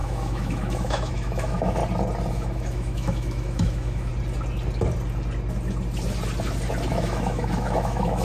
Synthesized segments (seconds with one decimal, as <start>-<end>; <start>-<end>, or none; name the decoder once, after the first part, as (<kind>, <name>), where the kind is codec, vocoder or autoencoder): 0.0-1.8 (autoencoder, DAC-VAE); 2.3-4.1; 6.9-8.2